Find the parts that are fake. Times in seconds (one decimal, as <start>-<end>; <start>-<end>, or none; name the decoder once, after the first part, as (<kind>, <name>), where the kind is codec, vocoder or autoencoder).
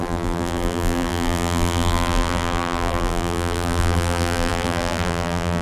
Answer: 0.0-5.6 (vocoder, BigVGAN v2)